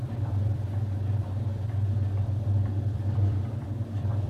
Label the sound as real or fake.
fake